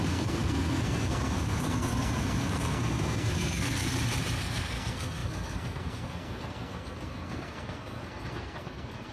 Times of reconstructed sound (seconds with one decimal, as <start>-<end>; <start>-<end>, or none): 0.0-3.9; 4.4-9.1